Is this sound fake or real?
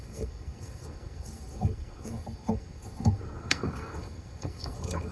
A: fake